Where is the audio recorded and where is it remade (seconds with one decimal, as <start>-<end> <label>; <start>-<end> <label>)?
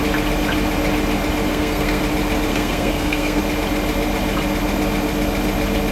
0.0-1.5 recorded; 1.5-2.0 remade; 2.0-2.5 recorded; 2.5-3.4 remade; 3.4-5.9 recorded